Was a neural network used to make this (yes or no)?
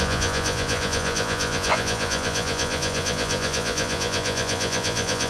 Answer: yes